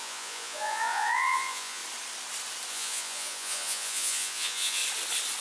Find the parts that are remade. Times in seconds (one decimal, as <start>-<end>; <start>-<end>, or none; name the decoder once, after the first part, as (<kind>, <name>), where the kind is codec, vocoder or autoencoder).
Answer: 0.0-1.8 (vocoder, Vocos); 2.7-4.8

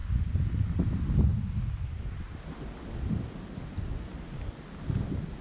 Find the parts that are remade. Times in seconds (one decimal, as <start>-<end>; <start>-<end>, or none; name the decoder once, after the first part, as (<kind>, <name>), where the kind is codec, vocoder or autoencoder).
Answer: none

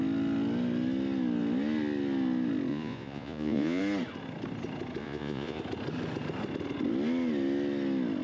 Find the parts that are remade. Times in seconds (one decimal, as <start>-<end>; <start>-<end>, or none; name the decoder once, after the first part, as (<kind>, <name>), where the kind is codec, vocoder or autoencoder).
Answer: 2.7-3.8 (vocoder, Vocos); 5.0-5.6

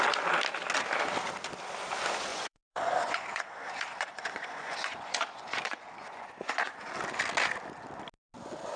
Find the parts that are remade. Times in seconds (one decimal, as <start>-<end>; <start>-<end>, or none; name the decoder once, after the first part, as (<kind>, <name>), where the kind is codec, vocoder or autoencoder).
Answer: 2.3-6.9 (vocoder, Vocos)

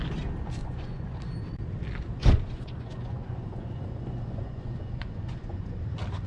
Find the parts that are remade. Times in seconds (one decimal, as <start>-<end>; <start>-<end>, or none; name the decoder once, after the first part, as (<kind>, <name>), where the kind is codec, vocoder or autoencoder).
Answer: 0.6-1.2 (vocoder, Vocos); 2.2-5.8

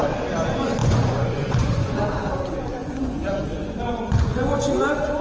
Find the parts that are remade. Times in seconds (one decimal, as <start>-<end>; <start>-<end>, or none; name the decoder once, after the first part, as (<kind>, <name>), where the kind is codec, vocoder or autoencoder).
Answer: 0.8-2.0 (vocoder, Vocos); 2.8-4.8

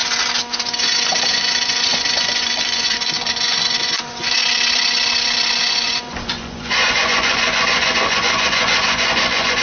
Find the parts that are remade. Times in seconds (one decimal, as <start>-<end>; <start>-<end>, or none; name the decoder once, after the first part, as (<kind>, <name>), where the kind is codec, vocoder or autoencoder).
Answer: 1.3-4.4 (vocoder, Vocos); 5.6-9.6

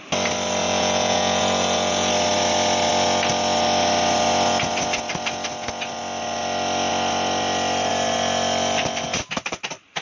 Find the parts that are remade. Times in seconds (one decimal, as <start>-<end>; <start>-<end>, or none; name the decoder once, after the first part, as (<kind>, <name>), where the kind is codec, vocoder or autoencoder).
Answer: 0.6-2.1 (vocoder, Vocos)